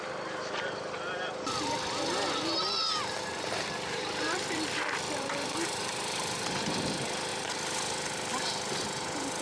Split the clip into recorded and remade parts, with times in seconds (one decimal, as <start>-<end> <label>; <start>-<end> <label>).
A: 0.0-7.3 remade; 7.3-8.3 recorded; 8.3-9.4 remade